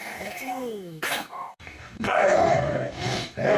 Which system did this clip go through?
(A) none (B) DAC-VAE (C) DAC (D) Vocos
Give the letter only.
C